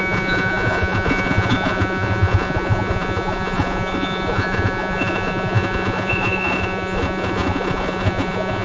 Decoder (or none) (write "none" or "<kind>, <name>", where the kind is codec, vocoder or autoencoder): vocoder, Vocos